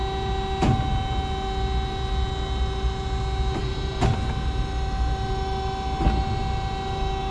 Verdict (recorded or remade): recorded